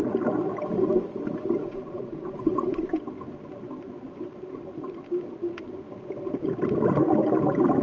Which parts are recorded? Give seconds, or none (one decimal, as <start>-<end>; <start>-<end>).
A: 0.0-1.6; 3.0-7.8